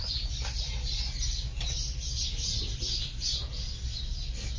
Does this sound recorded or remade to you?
recorded